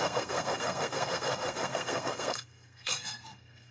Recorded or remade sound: remade